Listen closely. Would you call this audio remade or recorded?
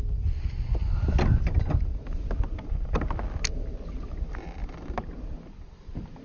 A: recorded